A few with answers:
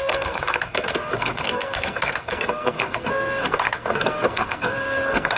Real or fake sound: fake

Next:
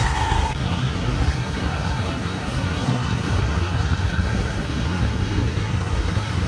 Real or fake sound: fake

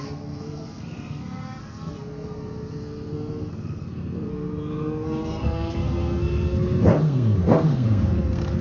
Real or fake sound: fake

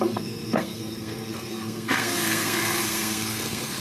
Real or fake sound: fake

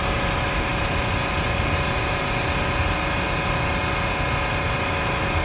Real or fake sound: real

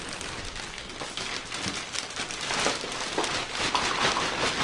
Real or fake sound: real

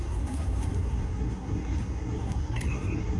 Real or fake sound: fake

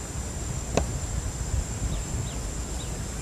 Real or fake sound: real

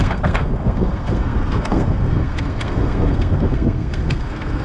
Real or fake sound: fake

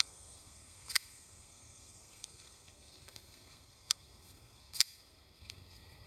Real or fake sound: fake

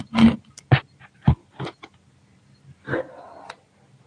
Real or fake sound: real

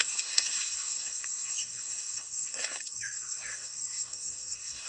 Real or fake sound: fake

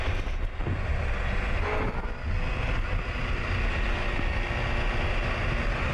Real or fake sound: real